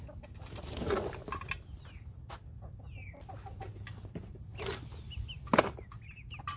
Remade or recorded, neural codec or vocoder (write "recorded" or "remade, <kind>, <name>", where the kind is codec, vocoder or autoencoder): recorded